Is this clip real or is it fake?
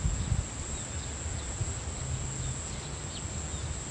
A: real